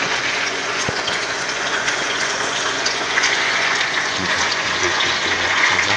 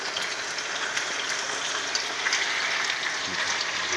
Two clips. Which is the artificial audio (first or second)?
first